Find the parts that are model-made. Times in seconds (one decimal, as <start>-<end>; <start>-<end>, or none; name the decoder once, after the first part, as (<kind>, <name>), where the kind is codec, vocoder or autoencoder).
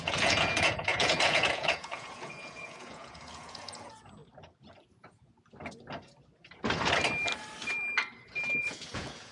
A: 0.0-4.2 (vocoder, Vocos); 8.6-9.3